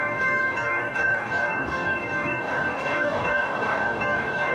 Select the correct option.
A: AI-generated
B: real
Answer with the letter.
A